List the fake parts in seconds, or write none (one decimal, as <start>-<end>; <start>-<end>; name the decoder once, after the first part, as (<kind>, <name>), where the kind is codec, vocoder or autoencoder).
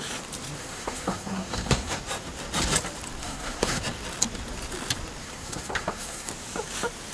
0.6-2.0 (codec, SNAC); 3.2-3.8; 5.2-6.3